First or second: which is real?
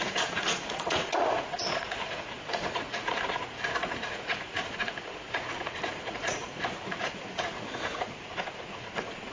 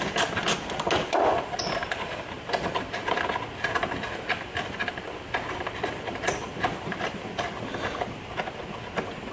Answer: second